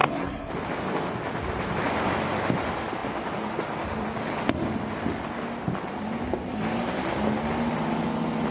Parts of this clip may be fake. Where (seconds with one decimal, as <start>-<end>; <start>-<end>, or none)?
0.0-0.5